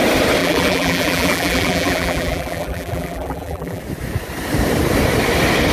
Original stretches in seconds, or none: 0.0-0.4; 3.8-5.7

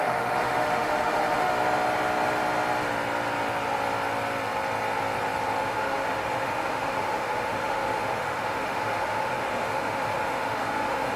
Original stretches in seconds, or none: 1.5-5.6

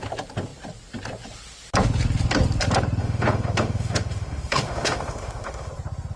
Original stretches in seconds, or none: 0.0-3.0; 5.7-6.2